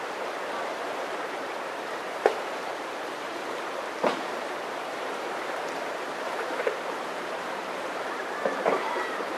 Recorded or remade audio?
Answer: remade